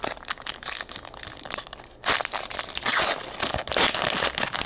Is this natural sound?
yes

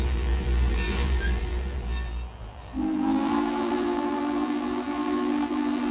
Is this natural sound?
no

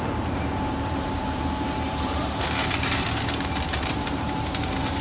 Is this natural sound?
no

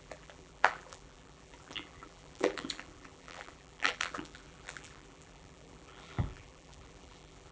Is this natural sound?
no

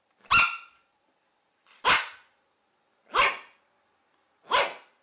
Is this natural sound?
yes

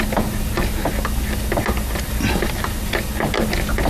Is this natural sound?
yes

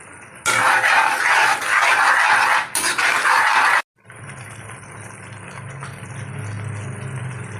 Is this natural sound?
yes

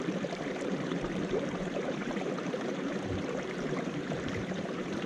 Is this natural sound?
no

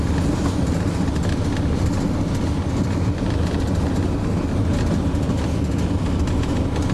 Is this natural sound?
yes